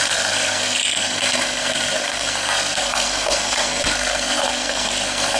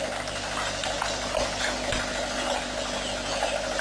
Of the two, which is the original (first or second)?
second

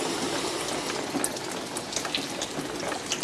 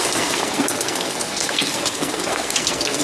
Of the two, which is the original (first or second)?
first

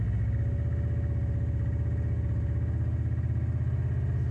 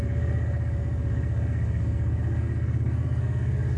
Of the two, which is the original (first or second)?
first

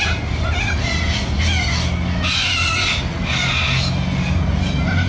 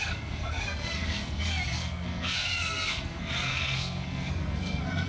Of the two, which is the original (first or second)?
first